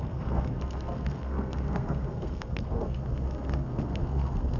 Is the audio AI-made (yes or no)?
yes